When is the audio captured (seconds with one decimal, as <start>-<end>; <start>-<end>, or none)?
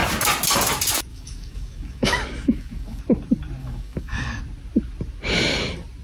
0.0-1.1; 3.0-3.6; 4.4-6.0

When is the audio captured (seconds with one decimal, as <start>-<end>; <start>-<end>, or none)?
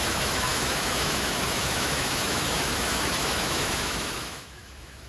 none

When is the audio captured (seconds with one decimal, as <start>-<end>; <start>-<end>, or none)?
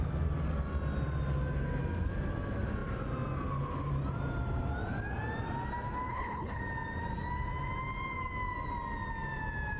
0.0-6.1; 6.6-9.8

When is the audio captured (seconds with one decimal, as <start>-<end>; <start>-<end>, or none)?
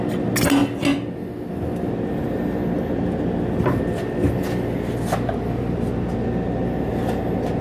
0.0-7.6